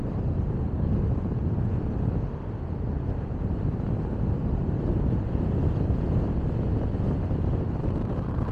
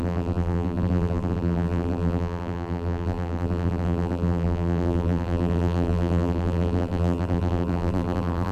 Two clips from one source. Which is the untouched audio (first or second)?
first